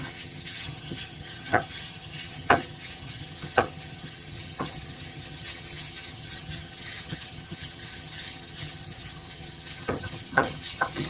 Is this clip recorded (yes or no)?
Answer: no